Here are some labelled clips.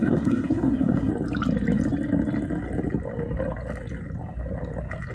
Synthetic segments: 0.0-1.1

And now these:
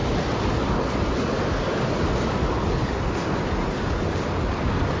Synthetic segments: none

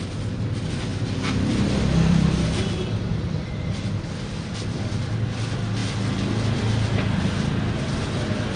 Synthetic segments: 0.9-5.1

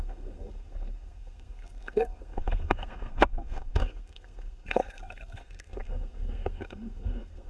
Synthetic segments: 0.0-7.5

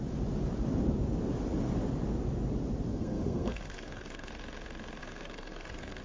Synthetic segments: 2.9-4.3; 5.0-6.0

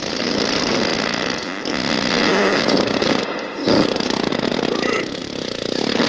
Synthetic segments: 2.3-3.2; 3.6-4.3

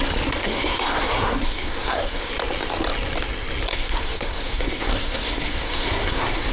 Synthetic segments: 0.4-2.3; 3.7-6.5